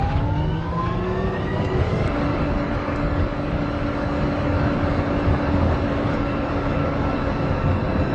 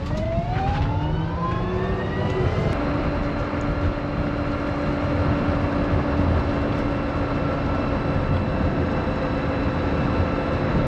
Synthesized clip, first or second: first